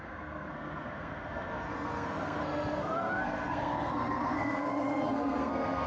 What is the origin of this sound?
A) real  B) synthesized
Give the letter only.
B